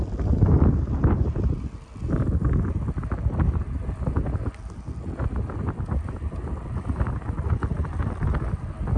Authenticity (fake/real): real